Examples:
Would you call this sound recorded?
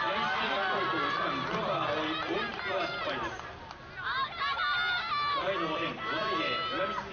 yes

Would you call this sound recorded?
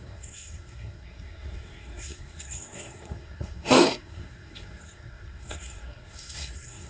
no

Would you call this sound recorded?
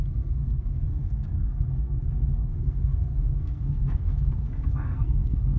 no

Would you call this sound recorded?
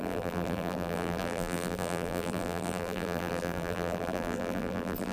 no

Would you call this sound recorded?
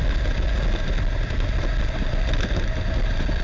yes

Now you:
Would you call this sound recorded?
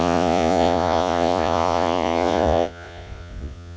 no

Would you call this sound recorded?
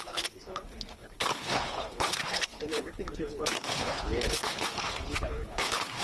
no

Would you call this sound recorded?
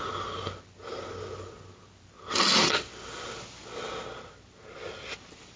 yes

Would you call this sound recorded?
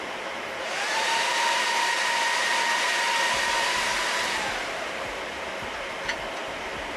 no